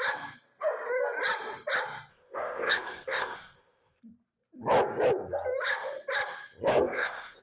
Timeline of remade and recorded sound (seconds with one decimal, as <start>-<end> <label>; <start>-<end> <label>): 0.0-2.1 recorded; 2.1-4.0 remade; 4.0-6.7 recorded; 6.7-7.4 remade